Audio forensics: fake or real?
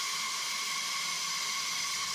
fake